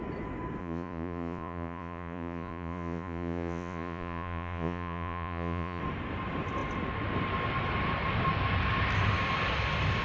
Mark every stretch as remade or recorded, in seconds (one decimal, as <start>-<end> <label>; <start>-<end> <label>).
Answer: 0.0-0.6 recorded; 0.6-5.8 remade; 5.8-10.0 recorded